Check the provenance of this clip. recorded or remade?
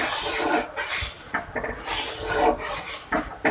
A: recorded